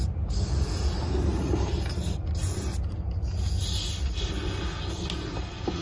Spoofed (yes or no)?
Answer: no